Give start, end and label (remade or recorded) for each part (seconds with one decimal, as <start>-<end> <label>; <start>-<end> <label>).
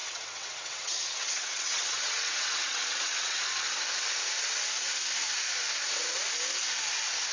0.0-3.4 remade; 3.4-7.3 recorded